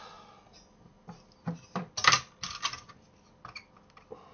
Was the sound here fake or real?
real